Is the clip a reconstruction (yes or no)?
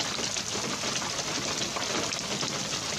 no